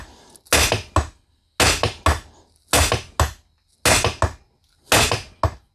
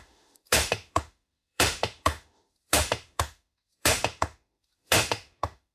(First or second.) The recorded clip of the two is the first